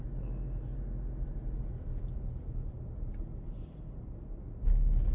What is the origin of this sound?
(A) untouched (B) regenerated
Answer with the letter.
A